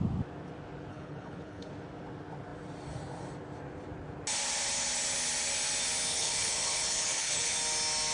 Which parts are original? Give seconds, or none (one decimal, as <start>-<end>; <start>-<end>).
0.0-0.9; 1.7-6.1; 7.5-8.1

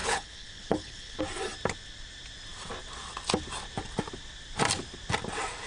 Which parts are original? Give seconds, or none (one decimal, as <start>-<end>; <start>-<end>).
1.2-5.7